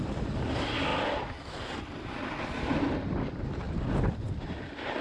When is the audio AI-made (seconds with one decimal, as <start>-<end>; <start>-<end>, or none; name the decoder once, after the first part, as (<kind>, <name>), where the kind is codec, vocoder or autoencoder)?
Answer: none